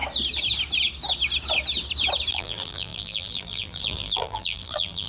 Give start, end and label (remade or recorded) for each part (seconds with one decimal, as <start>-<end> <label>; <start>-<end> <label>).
0.0-2.3 recorded; 2.3-5.1 remade